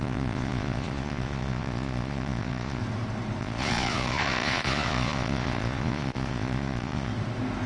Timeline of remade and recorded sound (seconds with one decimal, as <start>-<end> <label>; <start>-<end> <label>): 0.0-2.8 remade; 2.8-3.4 recorded; 3.4-7.1 remade; 7.1-7.7 recorded